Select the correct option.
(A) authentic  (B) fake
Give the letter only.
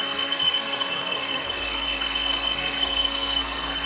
B